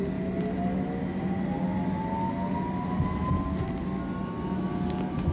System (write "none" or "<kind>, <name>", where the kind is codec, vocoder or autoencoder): none